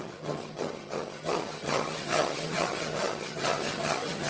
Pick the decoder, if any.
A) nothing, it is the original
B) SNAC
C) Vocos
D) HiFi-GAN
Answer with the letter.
D